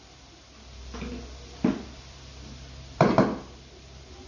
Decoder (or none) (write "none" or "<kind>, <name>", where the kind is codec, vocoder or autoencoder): none